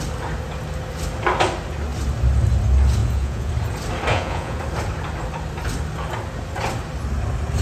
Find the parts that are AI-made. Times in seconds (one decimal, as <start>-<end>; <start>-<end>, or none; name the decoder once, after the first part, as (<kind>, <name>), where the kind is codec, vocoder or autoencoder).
3.0-3.5 (vocoder, Vocos); 4.1-4.6